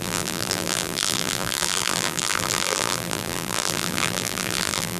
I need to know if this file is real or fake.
fake